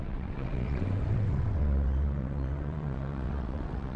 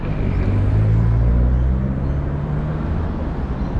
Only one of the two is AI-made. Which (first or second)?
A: first